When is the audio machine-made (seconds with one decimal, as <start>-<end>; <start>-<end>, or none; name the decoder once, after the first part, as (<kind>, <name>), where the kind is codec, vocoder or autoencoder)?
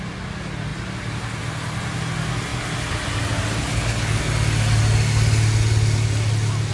3.7-4.2 (codec, HILCodec)